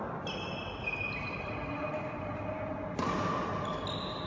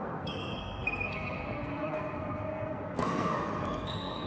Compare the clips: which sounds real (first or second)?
first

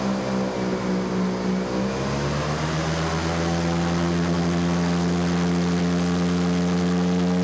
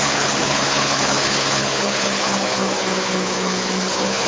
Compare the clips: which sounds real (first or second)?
first